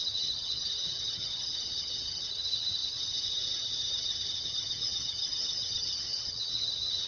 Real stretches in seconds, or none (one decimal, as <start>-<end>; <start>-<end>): none